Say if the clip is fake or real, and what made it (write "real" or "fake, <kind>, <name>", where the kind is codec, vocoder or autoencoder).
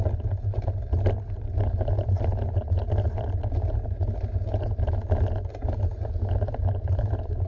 real